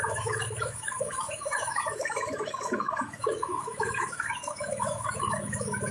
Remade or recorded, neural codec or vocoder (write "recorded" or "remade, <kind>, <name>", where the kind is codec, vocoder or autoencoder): remade, autoencoder, DAC-VAE